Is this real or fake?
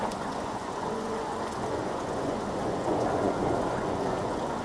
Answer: fake